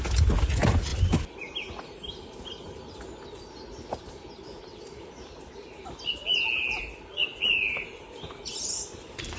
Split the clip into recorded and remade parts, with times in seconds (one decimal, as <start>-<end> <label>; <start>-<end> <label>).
0.0-9.4 recorded

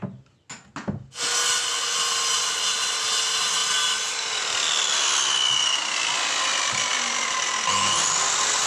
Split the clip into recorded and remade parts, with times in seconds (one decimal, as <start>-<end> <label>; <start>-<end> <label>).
0.0-8.7 recorded

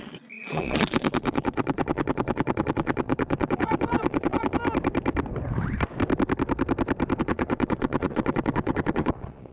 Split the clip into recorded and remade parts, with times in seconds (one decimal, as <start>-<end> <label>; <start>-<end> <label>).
0.0-4.6 remade; 4.6-7.2 recorded; 7.2-9.5 remade

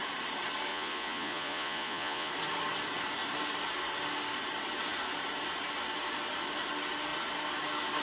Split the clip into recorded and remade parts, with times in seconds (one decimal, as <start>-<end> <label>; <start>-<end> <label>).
0.0-0.7 recorded; 0.7-2.3 remade; 2.3-8.0 recorded

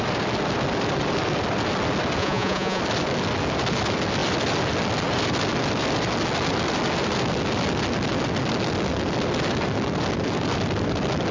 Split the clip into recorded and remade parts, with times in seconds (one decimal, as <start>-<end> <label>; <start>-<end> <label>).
0.0-2.2 recorded; 2.2-2.8 remade; 2.8-11.3 recorded

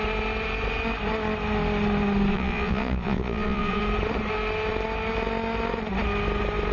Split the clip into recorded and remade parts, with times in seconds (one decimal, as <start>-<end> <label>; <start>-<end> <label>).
0.0-2.3 recorded; 2.3-3.8 remade; 3.8-6.7 recorded